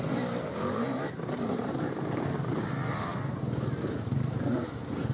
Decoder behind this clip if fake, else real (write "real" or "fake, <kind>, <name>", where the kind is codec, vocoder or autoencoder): fake, vocoder, BigVGAN v2